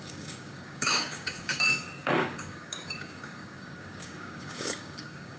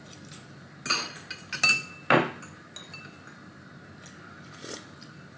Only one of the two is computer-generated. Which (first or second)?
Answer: first